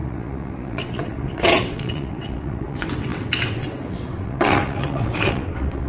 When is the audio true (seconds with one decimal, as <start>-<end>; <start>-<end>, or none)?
none